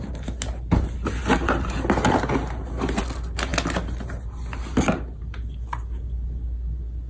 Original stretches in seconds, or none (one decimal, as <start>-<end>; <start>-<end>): 0.0-7.1